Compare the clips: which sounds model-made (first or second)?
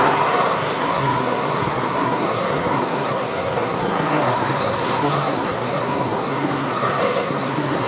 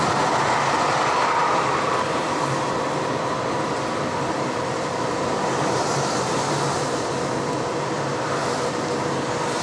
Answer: first